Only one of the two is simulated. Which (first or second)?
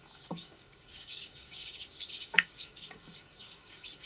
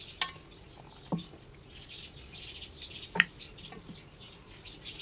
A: first